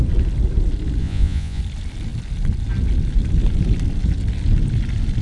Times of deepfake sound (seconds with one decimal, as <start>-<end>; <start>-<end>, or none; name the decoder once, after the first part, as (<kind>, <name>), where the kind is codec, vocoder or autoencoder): 1.0-1.6 (vocoder, Vocos)